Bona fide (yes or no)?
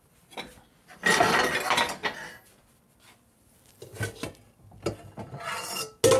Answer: yes